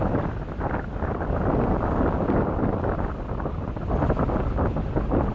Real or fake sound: real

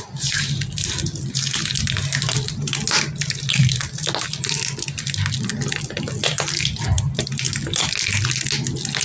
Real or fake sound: real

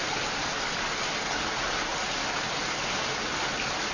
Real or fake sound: real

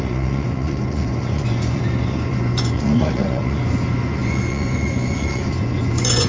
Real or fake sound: fake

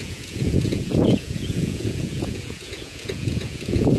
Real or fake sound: fake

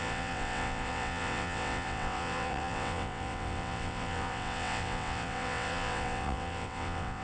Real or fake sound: fake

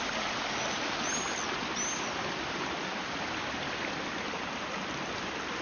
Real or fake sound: real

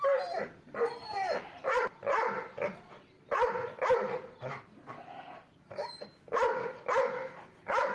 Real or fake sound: real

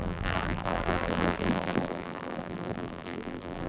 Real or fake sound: fake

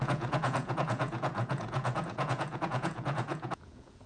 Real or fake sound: fake